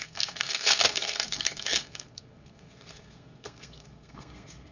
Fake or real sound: fake